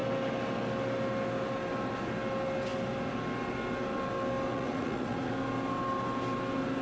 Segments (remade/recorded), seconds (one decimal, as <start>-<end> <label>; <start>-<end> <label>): 0.0-4.5 recorded; 4.5-5.3 remade; 5.3-6.8 recorded